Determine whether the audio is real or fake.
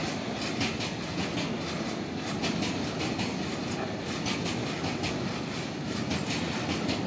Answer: real